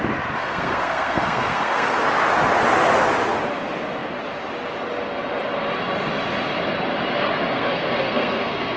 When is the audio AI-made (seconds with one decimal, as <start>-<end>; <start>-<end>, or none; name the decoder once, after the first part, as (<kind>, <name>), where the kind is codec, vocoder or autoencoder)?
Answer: 0.4-2.0 (codec, SNAC); 7.5-8.8